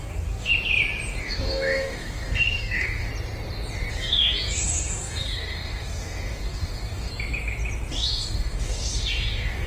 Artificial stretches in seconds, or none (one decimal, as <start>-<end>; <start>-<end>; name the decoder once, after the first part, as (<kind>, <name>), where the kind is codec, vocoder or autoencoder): 0.0-0.5 (codec, DAC); 1.2-3.1; 3.9-7.1; 7.9-9.7